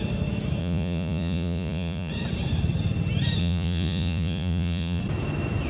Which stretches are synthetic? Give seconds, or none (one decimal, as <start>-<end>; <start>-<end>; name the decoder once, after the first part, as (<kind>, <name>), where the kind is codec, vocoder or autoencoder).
0.6-2.1 (vocoder, Vocos); 3.4-5.0